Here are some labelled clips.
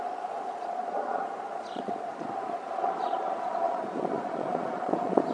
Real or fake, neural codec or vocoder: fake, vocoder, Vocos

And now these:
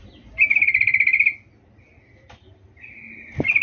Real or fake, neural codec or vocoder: real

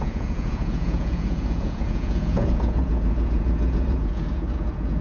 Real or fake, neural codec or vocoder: fake, vocoder, Vocos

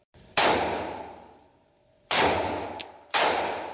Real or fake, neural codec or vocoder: real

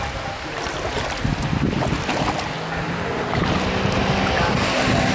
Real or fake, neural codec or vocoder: real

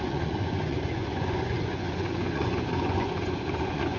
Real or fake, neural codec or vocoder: fake, vocoder, Vocos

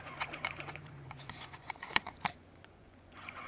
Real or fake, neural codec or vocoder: fake, vocoder, Vocos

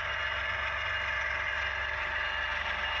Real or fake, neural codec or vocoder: real